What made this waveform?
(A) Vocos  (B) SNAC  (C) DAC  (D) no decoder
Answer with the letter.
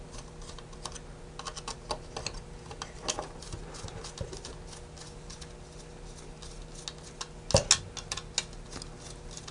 D